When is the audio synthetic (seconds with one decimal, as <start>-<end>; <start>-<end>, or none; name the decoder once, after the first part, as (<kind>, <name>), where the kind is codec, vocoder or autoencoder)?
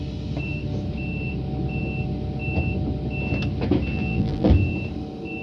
3.9-4.5 (vocoder, BigVGAN v2)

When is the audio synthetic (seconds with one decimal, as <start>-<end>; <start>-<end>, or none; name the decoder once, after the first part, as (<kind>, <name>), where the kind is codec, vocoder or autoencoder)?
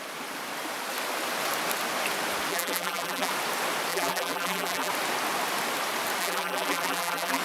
2.5-3.3 (vocoder, BigVGAN v2); 3.9-4.9; 6.2-7.4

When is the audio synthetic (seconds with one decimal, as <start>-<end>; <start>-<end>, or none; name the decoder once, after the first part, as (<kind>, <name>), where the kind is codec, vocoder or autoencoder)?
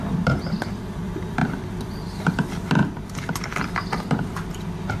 0.0-2.8 (vocoder, BigVGAN v2); 3.6-5.0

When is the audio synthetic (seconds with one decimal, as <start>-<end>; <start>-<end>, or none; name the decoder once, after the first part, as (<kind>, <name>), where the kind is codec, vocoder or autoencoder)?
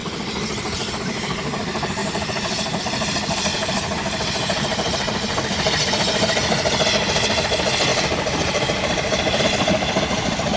2.0-2.8 (vocoder, BigVGAN v2); 3.5-5.9; 7.9-9.4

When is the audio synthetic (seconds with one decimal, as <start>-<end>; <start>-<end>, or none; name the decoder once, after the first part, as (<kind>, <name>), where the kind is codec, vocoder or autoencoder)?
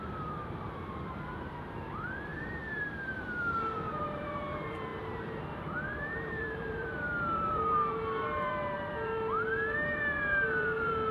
0.0-11.1 (vocoder, BigVGAN v2)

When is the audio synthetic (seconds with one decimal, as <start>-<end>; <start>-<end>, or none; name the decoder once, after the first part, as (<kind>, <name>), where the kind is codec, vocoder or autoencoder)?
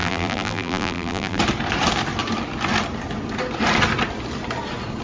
0.0-1.4 (vocoder, BigVGAN v2)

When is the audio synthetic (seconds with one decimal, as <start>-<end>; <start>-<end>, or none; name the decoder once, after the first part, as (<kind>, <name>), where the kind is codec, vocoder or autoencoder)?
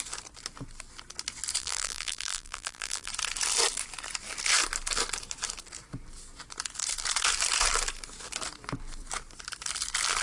1.6-3.1 (vocoder, BigVGAN v2)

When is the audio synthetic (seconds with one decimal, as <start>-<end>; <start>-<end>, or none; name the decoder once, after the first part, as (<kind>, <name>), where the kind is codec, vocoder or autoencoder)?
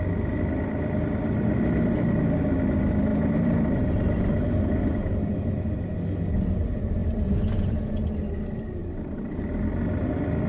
3.1-5.3 (vocoder, BigVGAN v2); 7.0-7.8; 8.8-9.6